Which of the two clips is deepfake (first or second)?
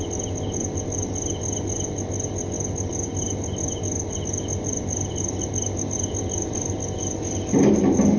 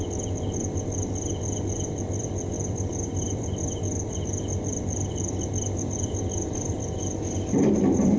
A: second